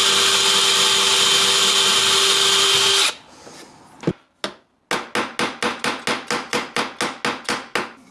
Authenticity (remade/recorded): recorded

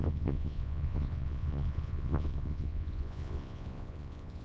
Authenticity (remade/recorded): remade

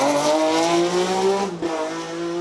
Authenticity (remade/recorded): recorded